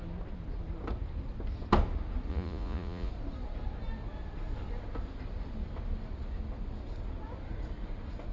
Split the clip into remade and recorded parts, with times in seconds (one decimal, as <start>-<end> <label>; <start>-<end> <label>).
0.0-2.3 recorded; 2.3-3.1 remade; 3.1-8.3 recorded